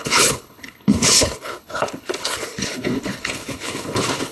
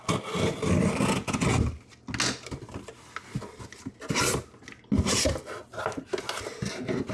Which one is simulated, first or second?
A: first